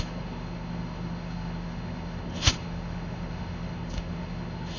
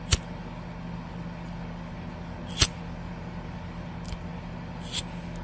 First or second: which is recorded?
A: second